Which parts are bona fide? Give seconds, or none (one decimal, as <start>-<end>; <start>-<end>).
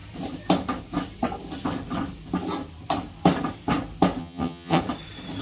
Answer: 0.0-4.2; 4.8-5.4